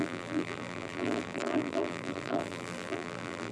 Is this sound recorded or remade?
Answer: remade